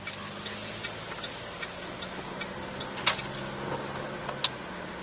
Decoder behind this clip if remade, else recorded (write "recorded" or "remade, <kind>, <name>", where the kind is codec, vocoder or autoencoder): recorded